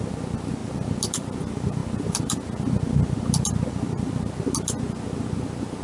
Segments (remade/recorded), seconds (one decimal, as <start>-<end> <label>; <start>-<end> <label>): 0.0-5.8 recorded